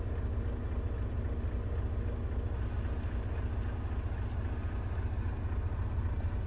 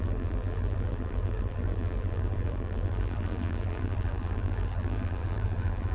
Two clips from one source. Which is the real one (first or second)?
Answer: first